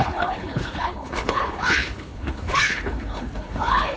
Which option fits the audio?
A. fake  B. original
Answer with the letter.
A